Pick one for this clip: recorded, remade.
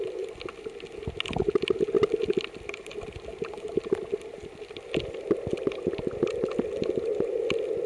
recorded